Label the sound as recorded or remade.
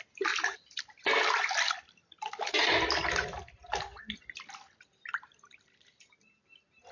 recorded